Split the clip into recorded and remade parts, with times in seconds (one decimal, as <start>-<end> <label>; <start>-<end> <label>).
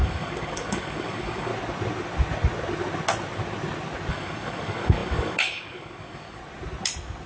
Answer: 0.0-1.5 remade; 1.5-4.1 recorded; 4.1-6.4 remade; 6.4-7.3 recorded